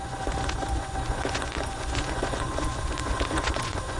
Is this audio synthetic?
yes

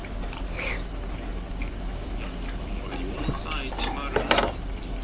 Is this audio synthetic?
no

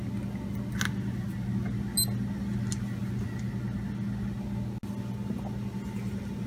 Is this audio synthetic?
no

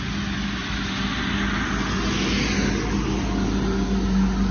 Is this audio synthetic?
no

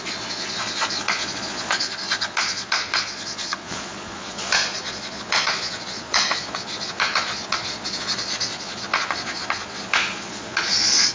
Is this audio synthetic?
yes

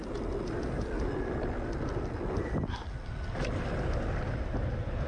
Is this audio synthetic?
no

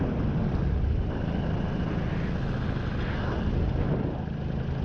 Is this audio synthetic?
no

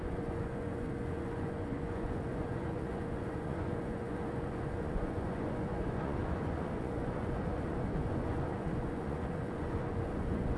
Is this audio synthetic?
yes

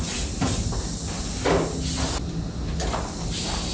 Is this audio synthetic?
no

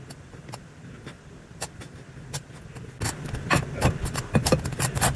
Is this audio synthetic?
no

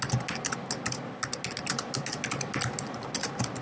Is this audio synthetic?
no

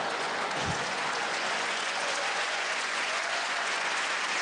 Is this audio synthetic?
yes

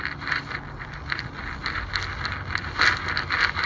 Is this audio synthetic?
no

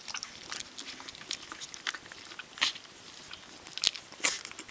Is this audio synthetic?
no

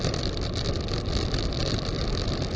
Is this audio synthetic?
no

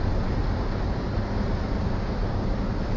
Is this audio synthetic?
no